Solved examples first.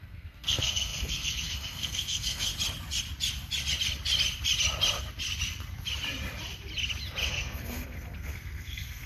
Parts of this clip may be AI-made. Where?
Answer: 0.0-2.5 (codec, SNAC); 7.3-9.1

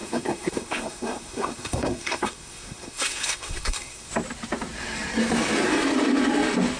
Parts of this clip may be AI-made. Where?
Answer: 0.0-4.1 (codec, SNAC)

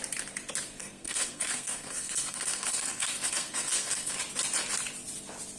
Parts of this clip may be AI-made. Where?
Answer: 0.8-4.2 (codec, SNAC)

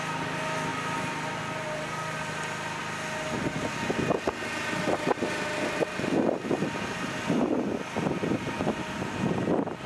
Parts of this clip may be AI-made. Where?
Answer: none

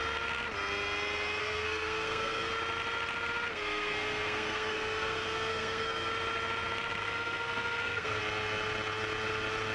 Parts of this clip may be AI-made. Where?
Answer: 1.4-2.5 (codec, SNAC); 3.5-6.1; 7.0-8.2

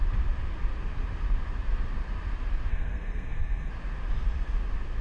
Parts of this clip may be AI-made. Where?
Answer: 2.7-3.7 (codec, SNAC)

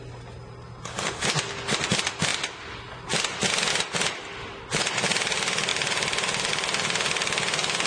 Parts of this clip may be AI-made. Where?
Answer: none

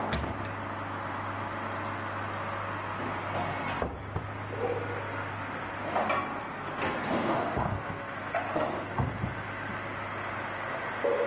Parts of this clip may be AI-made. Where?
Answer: 6.4-8.4 (codec, SNAC)